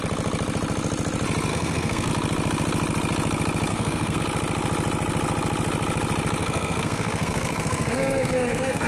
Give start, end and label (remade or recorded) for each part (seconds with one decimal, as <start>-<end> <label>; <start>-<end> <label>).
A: 0.0-1.5 recorded; 1.5-2.1 remade; 2.1-3.7 recorded; 3.7-4.2 remade; 4.2-6.4 recorded; 6.4-8.9 remade